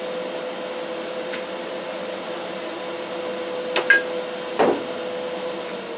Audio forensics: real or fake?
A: real